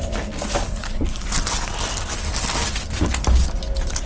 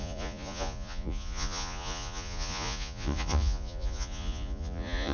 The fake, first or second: second